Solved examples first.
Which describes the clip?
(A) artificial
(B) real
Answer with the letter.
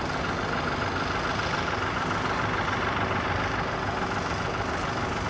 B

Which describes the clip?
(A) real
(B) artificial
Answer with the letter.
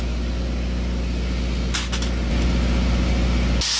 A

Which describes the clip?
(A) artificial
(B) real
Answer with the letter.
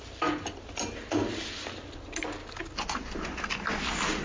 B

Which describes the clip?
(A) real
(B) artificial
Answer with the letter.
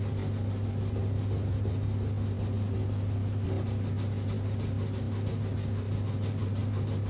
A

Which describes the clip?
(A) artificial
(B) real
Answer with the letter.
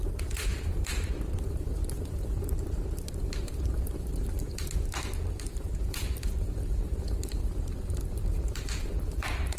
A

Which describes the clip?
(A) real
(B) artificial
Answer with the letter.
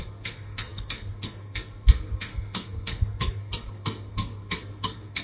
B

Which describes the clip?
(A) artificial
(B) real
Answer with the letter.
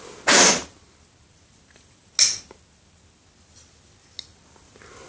B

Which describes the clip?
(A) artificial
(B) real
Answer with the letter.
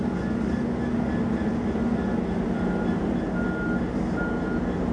B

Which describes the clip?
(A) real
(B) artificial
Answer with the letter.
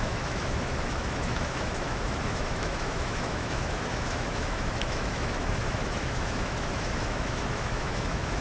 B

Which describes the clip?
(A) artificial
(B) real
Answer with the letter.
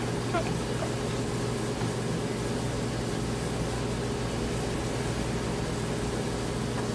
B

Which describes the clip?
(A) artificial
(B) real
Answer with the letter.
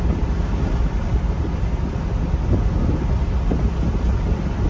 B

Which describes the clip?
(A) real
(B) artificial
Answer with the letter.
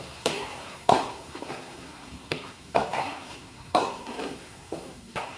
B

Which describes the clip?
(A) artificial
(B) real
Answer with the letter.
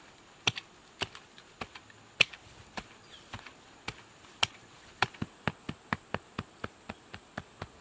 B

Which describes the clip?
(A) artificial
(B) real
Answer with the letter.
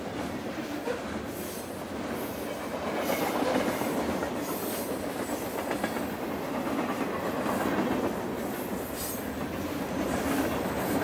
B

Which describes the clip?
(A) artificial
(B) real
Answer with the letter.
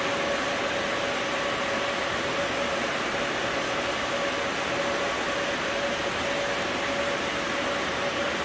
B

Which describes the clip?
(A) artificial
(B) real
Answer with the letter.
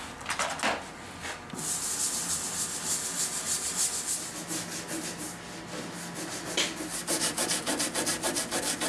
B